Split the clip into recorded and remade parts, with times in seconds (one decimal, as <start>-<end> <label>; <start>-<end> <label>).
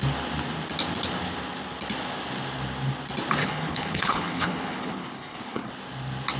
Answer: 0.0-3.4 recorded; 3.4-5.7 remade; 5.7-6.4 recorded